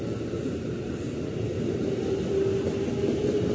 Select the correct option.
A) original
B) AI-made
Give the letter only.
A